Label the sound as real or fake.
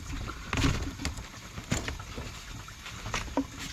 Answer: real